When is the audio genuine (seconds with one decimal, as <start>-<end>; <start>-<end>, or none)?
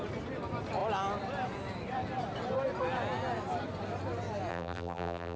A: 0.0-4.5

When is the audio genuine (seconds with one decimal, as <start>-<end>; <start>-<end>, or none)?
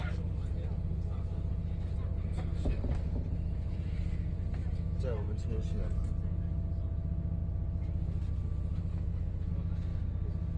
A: 0.0-8.9; 9.5-10.6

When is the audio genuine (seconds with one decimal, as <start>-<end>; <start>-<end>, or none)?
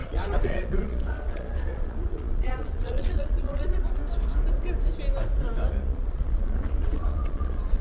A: 4.0-5.7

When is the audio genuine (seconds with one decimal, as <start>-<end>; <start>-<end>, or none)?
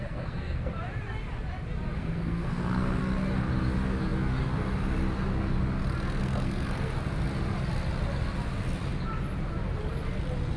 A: 0.7-1.9; 3.0-6.2; 6.9-10.6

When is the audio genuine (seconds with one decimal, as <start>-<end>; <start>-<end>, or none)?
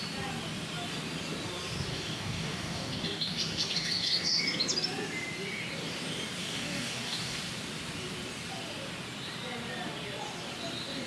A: 0.0-1.9; 4.4-6.4; 7.4-11.1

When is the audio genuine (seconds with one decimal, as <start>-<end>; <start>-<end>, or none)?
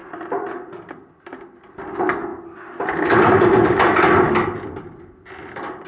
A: 0.0-5.9